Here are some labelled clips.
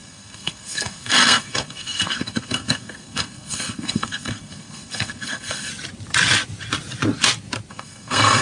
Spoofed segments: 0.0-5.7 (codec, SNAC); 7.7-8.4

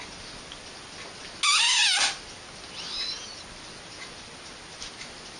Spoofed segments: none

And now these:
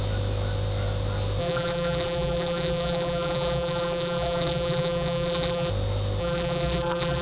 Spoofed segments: 1.4-5.7 (vocoder, BigVGAN v2); 6.2-7.2

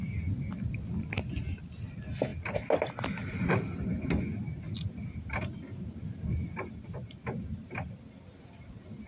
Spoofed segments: none

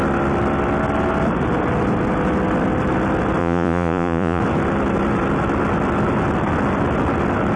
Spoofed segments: 3.4-4.4 (vocoder, Vocos)

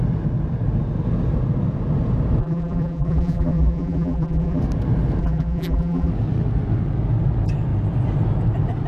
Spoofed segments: 2.4-4.6 (vocoder, BigVGAN v2); 5.2-6.1

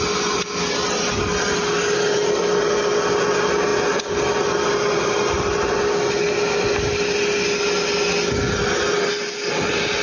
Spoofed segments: none

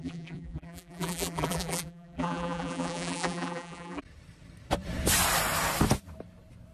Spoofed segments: 0.0-4.0 (vocoder, BigVGAN v2)